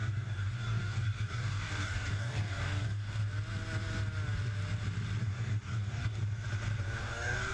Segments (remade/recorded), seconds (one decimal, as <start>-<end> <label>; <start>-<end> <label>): 0.0-3.2 remade; 3.2-5.2 recorded; 5.2-6.2 remade; 6.2-7.0 recorded; 7.0-7.5 remade